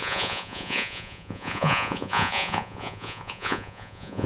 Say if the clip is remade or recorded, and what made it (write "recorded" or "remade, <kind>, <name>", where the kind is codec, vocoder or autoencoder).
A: remade, vocoder, Vocos